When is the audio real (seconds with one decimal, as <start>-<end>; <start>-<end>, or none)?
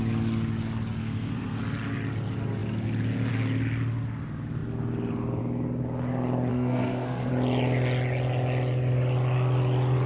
0.0-1.0; 1.6-6.5; 7.3-10.1